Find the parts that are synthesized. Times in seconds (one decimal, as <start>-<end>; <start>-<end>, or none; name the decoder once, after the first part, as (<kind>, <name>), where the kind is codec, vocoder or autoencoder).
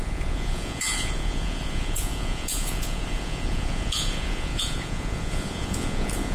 0.0-6.3 (vocoder, Vocos)